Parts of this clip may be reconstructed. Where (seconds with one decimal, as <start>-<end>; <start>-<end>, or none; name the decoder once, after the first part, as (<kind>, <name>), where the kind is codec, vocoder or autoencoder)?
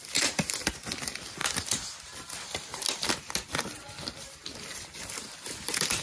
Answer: none